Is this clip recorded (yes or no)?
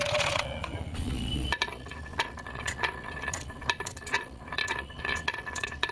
no